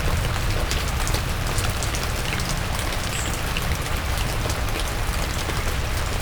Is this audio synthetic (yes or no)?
no